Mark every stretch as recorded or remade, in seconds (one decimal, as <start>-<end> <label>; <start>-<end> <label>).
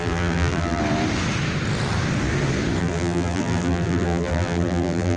0.0-0.8 remade; 0.8-2.8 recorded; 2.8-5.2 remade